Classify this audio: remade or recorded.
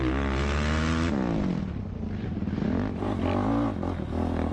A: recorded